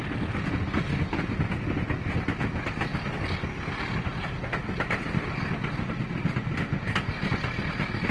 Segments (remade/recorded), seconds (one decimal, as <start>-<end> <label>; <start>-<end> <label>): 0.0-8.1 recorded